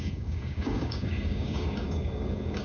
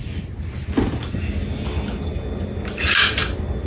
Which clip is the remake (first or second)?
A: first